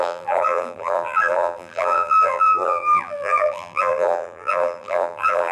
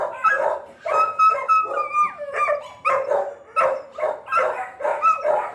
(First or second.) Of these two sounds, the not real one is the first